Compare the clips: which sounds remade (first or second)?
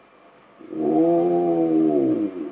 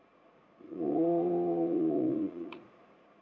second